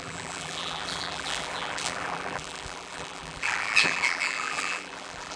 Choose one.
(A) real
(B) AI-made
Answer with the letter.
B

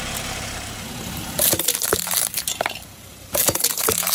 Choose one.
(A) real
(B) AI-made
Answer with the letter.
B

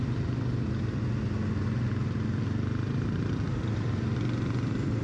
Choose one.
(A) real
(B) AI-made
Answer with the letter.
A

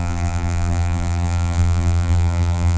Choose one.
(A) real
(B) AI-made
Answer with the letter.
B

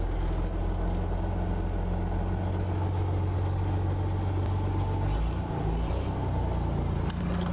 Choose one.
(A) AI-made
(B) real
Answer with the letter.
B